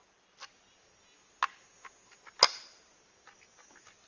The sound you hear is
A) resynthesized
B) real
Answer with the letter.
B